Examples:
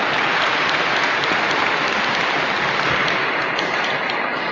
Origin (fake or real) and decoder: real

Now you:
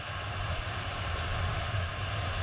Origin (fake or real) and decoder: real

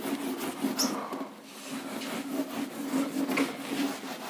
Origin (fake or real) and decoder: real